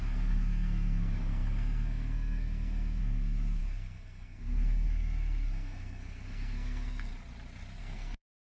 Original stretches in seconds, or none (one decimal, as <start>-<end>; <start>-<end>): 7.1-7.8

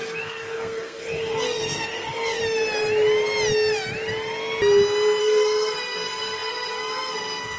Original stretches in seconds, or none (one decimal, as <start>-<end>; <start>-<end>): 2.4-5.2